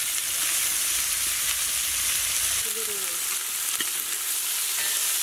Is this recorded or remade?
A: recorded